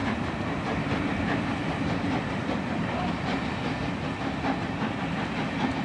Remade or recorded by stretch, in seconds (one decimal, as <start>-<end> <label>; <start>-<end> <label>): 0.0-3.1 remade; 3.1-5.8 recorded